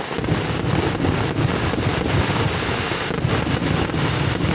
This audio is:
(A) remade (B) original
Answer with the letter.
B